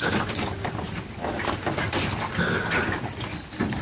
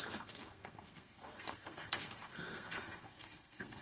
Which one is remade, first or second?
second